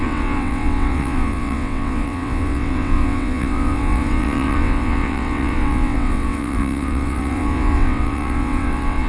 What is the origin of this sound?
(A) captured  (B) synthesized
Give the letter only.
B